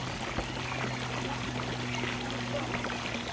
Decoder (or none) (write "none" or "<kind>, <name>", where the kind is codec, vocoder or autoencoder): none